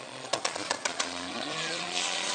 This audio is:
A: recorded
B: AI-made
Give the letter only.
B